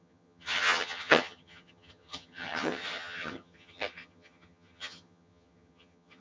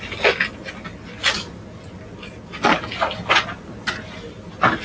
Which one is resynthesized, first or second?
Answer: first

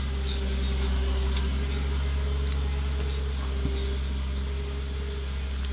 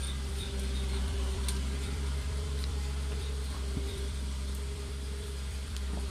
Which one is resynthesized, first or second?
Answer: second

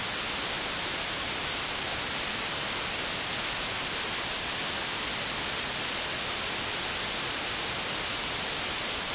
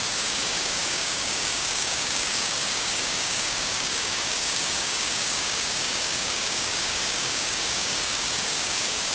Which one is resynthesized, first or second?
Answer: second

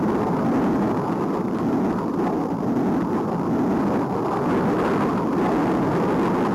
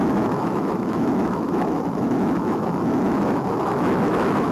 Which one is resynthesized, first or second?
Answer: second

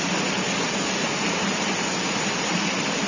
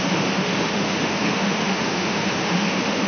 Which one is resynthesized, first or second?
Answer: second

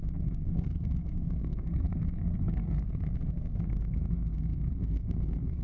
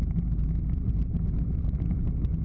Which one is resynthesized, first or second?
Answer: first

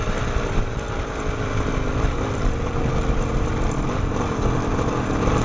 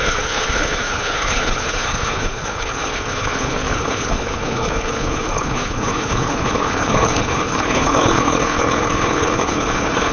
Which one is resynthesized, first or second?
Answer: second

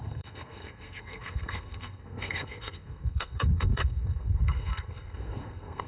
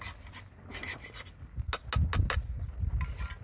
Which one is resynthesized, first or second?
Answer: first